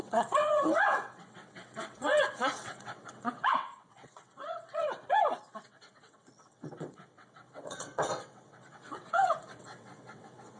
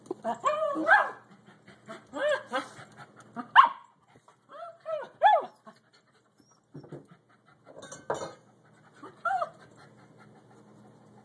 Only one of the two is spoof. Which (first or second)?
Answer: first